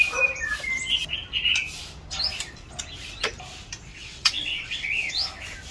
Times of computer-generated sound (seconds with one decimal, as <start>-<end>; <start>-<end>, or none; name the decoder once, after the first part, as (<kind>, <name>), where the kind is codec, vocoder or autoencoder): 3.9-5.1 (vocoder, WaveNeXt)